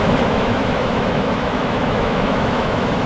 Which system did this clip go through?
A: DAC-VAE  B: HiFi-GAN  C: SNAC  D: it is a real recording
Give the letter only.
A